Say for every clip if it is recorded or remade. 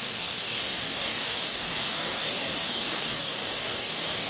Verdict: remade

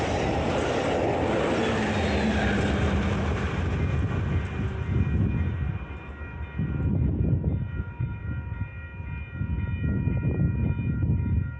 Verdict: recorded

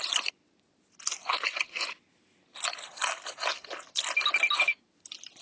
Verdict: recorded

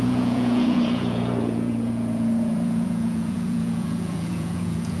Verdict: remade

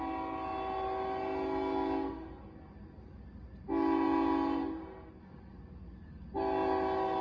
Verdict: recorded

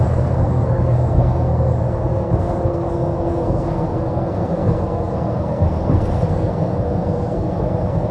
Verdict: remade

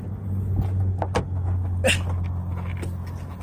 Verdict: recorded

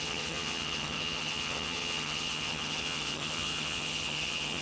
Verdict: remade